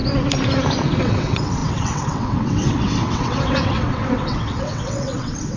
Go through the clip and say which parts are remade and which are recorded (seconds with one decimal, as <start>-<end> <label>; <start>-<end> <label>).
0.0-1.0 recorded; 1.0-5.6 remade